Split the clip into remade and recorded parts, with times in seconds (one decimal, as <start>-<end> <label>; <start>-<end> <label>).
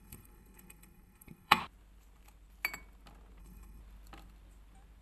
0.0-1.6 remade; 1.6-3.4 recorded; 3.4-3.8 remade; 3.8-5.0 recorded